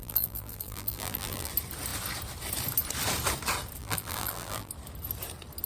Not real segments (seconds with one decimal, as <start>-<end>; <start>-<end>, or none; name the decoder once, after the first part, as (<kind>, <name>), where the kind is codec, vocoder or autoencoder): 0.0-1.5 (vocoder, BigVGAN v2); 3.8-4.7